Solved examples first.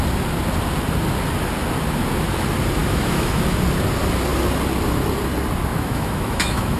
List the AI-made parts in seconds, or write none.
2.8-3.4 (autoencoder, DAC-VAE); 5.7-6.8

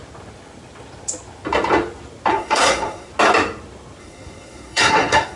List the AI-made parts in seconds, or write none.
2.3-3.1 (codec, SNAC); 4.0-5.4

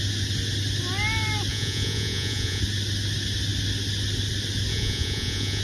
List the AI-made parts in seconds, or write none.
1.5-2.6 (vocoder, Vocos); 4.7-5.6